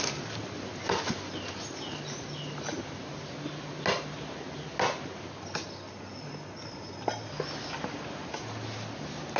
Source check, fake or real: real